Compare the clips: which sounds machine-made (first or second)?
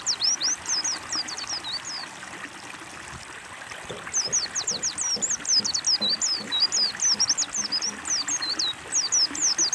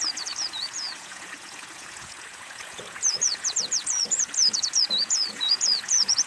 second